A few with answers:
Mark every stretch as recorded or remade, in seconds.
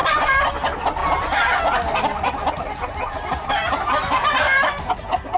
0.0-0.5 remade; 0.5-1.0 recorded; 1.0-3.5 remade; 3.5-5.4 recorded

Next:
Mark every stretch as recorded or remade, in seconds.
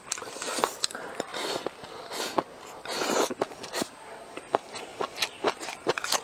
0.0-1.3 remade; 1.3-3.7 recorded; 3.7-4.9 remade; 4.9-5.6 recorded; 5.6-6.2 remade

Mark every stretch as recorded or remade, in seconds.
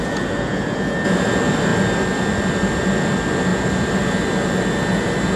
0.0-5.4 recorded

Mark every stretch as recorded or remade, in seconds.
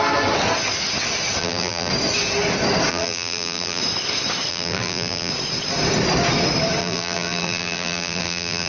0.0-1.4 recorded; 1.4-1.9 remade; 1.9-2.9 recorded; 2.9-3.8 remade; 3.8-4.5 recorded; 4.5-5.3 remade; 5.3-6.8 recorded; 6.8-8.7 remade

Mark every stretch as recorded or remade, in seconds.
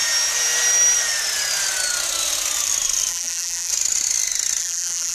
0.0-3.1 recorded; 3.1-3.7 remade; 3.7-4.6 recorded; 4.6-5.1 remade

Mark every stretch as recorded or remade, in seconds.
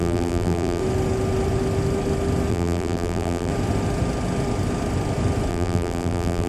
0.0-0.8 remade; 0.8-2.5 recorded; 2.5-3.5 remade; 3.5-5.5 recorded; 5.5-6.5 remade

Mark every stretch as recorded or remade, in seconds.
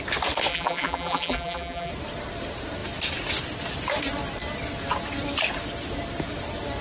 0.0-0.5 recorded; 0.5-1.9 remade; 1.9-6.8 recorded